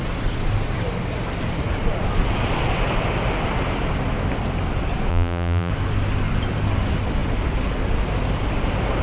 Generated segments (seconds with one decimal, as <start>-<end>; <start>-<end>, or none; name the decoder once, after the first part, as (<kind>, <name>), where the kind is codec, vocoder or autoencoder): 5.1-5.7 (vocoder, BigVGAN v2)